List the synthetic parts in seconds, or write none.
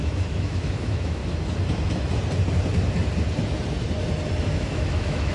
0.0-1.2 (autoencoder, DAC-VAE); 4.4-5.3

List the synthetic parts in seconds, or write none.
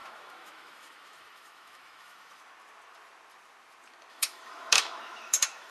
0.0-2.4 (autoencoder, DAC-VAE); 4.1-5.7